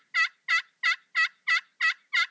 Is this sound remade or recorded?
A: recorded